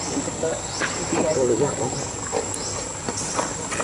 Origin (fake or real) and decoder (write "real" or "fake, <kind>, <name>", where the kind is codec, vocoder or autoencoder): real